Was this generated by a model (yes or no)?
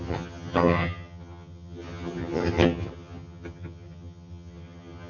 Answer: yes